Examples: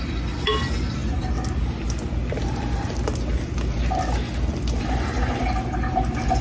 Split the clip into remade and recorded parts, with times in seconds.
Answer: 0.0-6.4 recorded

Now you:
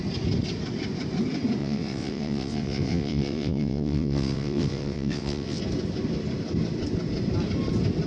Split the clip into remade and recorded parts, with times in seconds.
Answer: 0.0-1.6 recorded; 1.6-5.6 remade; 5.6-8.1 recorded

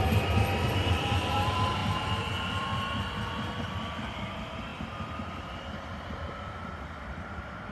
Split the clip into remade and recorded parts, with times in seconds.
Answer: 0.0-1.8 remade; 1.8-2.3 recorded; 2.3-2.7 remade; 2.7-3.6 recorded; 3.6-7.7 remade